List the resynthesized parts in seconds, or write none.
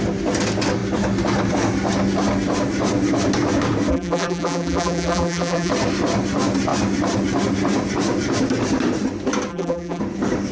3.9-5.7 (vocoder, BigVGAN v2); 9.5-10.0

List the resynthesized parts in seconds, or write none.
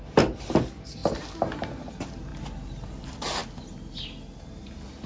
none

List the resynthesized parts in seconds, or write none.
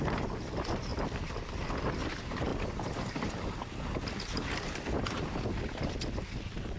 0.9-1.9 (vocoder, BigVGAN v2); 2.5-6.2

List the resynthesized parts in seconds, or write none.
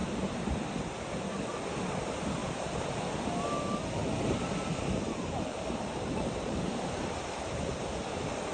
0.0-0.6 (vocoder, BigVGAN v2); 2.4-3.1; 4.0-8.0